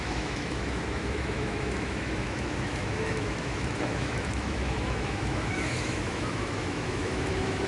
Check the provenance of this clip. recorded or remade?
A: remade